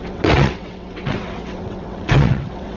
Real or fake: fake